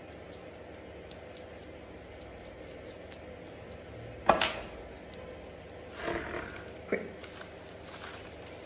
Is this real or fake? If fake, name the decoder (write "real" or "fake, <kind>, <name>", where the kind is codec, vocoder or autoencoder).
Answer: real